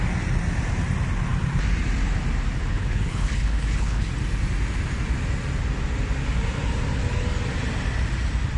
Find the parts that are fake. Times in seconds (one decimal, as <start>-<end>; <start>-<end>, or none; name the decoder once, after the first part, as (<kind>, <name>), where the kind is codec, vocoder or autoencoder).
2.7-4.1 (codec, HILCodec)